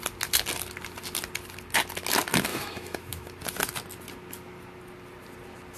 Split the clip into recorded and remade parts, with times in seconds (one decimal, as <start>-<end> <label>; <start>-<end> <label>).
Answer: 0.0-2.5 recorded; 2.5-3.3 remade; 3.3-5.8 recorded